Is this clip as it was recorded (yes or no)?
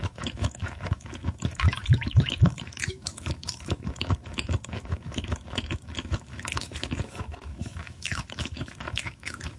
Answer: no